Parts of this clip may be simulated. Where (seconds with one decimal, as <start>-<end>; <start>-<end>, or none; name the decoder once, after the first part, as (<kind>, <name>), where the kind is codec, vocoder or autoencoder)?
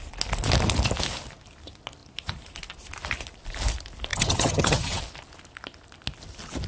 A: 4.1-5.0 (vocoder, HiFi-GAN)